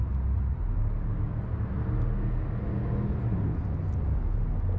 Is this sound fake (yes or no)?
no